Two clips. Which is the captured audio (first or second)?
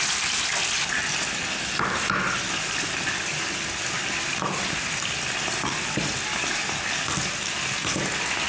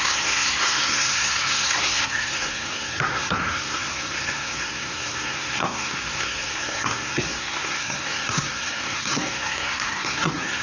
first